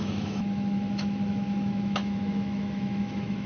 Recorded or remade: remade